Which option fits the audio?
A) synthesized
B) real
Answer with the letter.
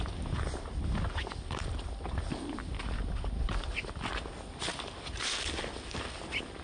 B